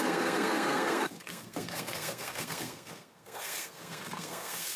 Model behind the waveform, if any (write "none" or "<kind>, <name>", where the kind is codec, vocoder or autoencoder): codec, SNAC